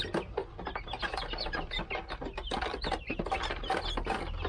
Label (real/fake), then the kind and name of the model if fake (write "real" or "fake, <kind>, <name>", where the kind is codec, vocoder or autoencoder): real